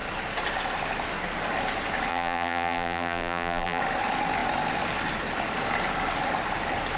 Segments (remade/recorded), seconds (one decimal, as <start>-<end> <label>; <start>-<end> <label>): 0.0-2.1 recorded; 2.1-3.8 remade; 3.8-7.0 recorded